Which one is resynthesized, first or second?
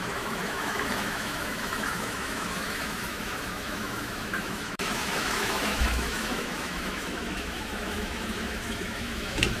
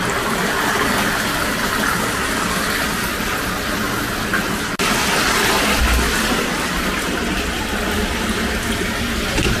first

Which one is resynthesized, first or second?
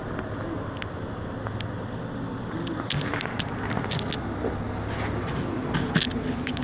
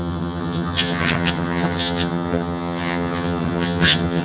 second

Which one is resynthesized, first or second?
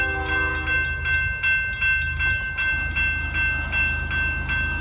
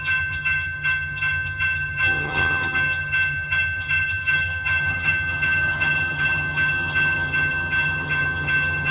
second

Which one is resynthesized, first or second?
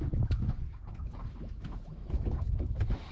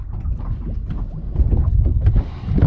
first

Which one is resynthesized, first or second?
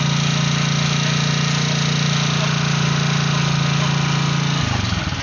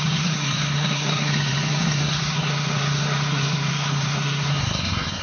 second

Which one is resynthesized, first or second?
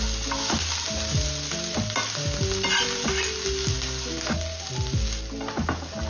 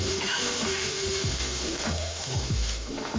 second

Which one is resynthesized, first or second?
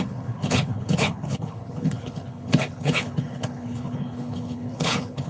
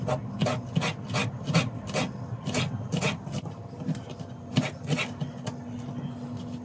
first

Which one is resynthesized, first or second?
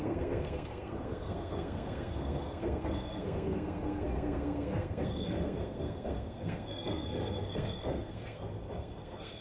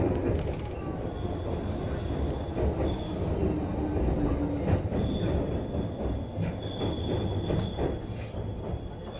first